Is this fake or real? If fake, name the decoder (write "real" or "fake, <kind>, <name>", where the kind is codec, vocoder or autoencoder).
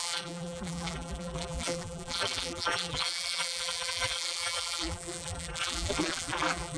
fake, vocoder, BigVGAN v2